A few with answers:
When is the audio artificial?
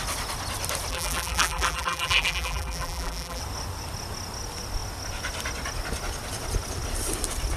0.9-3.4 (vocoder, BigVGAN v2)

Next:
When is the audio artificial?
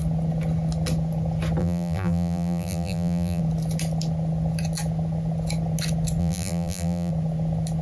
1.6-3.4 (vocoder, BigVGAN v2); 6.2-7.1